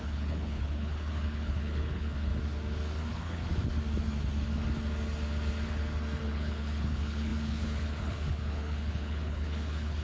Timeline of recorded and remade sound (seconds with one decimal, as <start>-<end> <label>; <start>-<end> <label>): 0.0-2.3 remade; 2.3-3.1 recorded; 3.1-3.5 remade; 3.5-6.2 recorded; 6.2-10.0 remade